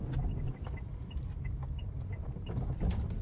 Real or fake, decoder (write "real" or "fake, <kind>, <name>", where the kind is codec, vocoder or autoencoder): real